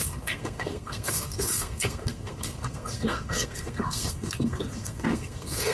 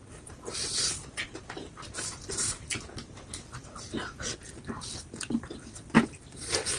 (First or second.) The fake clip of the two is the first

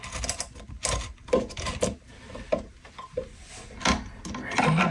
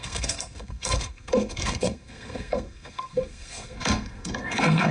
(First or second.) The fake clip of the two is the second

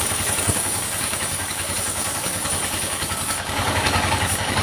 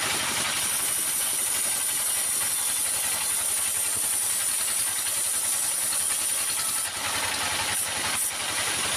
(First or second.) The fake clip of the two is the first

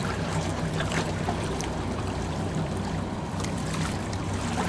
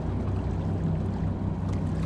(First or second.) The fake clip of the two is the first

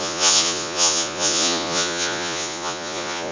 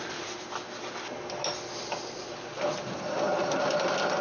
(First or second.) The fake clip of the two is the first